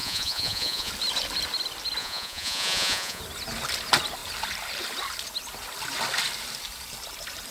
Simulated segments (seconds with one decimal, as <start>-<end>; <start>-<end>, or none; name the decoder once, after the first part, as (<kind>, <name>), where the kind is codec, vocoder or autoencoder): 0.0-0.9 (vocoder, Vocos); 2.0-3.2